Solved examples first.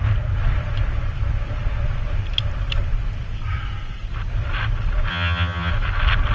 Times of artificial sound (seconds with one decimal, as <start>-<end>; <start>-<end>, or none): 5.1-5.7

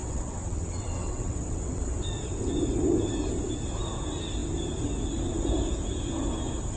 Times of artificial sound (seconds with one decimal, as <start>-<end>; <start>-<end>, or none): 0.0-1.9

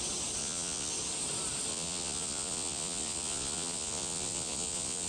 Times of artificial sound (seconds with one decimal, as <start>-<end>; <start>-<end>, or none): 0.4-0.9; 1.7-5.1

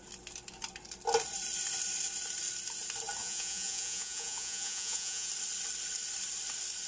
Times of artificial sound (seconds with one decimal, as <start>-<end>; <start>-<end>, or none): 3.2-5.3

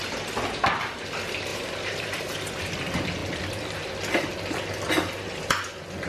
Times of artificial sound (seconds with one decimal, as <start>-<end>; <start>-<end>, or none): 1.5-2.5